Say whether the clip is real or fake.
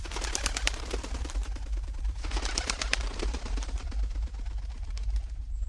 fake